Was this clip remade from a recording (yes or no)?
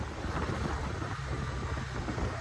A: no